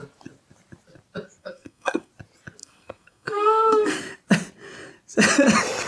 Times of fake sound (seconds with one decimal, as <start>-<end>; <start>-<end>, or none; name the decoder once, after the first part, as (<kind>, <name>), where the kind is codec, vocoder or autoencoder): 1.4-2.1 (codec, SNAC); 2.6-4.0